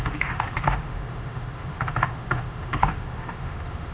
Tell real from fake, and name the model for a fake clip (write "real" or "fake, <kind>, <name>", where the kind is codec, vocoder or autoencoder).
fake, autoencoder, DAC-VAE